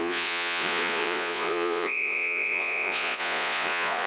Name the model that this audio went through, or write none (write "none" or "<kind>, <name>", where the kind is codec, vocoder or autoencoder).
vocoder, Vocos